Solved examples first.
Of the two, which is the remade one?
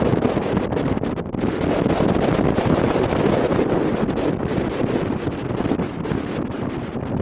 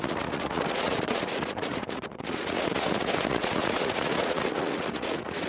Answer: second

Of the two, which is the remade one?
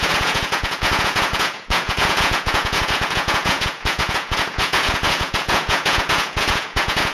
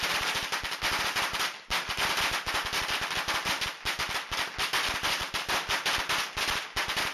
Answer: first